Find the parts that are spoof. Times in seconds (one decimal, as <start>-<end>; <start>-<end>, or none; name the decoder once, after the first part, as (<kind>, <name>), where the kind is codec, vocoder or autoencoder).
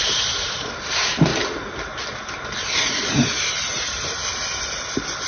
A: 0.0-1.3 (vocoder, BigVGAN v2); 3.1-4.2